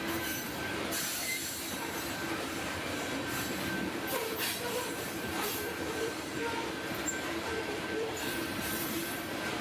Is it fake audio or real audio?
fake